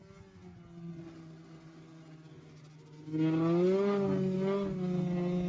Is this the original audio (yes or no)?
yes